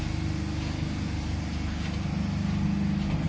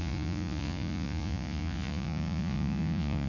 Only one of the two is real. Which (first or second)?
first